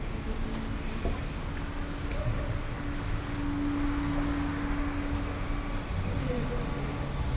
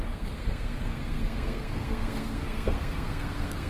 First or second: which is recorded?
first